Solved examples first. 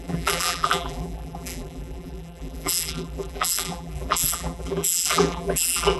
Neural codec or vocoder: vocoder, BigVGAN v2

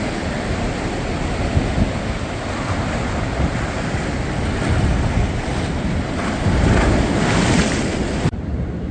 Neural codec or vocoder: none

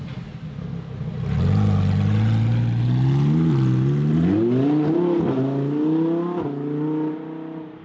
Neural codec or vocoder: none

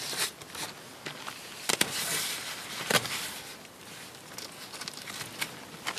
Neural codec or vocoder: none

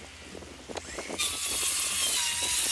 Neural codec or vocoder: none